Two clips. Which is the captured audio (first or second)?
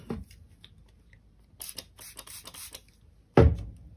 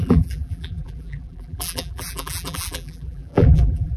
first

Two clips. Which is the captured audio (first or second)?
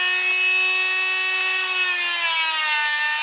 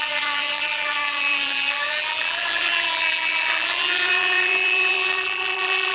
first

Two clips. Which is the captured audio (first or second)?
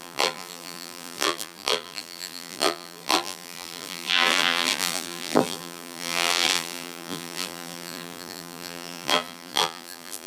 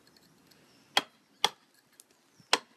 second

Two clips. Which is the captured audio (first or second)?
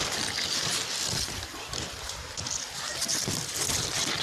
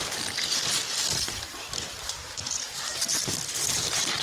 first